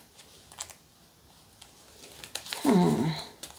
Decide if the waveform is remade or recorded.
recorded